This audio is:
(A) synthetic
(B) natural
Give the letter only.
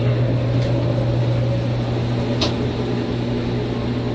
B